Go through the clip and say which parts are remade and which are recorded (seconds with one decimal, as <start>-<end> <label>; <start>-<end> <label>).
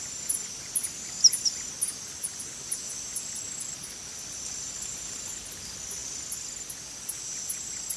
0.0-8.0 recorded